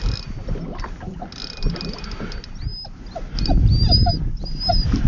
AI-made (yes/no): no